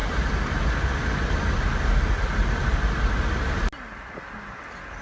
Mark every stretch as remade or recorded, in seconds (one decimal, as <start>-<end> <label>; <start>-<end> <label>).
0.0-5.0 recorded